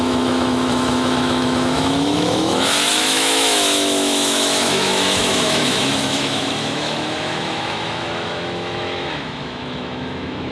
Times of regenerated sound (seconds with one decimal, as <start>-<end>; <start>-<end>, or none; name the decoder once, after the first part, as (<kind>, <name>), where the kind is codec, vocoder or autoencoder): 0.0-10.5 (autoencoder, DAC-VAE)